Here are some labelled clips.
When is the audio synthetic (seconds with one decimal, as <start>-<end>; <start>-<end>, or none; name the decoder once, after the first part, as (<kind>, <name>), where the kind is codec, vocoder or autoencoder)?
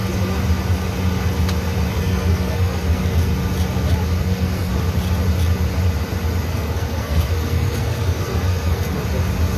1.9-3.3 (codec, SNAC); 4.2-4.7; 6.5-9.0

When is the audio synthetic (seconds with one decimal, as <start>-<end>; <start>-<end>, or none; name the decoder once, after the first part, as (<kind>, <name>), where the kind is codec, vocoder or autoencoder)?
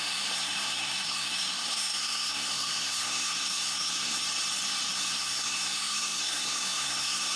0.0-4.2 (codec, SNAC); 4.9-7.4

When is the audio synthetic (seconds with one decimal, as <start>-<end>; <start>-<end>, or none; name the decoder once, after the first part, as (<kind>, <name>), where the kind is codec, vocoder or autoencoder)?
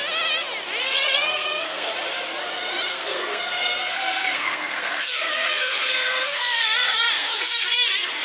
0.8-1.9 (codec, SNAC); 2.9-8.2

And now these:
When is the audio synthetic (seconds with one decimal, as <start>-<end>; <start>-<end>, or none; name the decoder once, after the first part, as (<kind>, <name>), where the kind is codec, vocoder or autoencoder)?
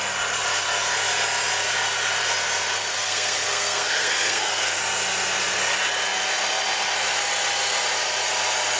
2.9-4.8 (codec, SNAC)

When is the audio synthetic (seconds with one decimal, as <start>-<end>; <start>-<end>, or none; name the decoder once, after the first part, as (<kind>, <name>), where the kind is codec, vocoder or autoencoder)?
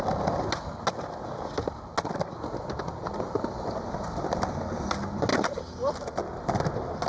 none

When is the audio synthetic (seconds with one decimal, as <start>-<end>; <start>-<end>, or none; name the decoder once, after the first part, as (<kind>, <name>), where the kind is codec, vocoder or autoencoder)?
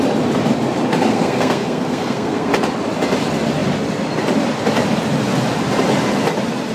0.9-2.5 (codec, SNAC)